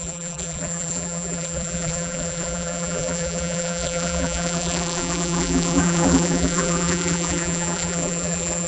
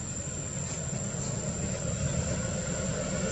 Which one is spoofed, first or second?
first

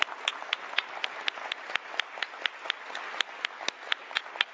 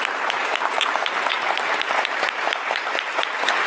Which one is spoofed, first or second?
second